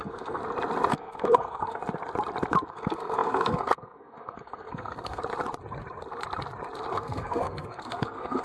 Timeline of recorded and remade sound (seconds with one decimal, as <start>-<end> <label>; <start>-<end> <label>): 0.0-0.4 remade; 0.4-0.9 recorded; 0.9-1.8 remade; 1.8-2.7 recorded; 2.7-5.2 remade; 5.2-6.9 recorded; 6.9-8.4 remade